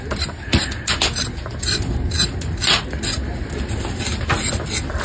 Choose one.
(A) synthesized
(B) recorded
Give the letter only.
B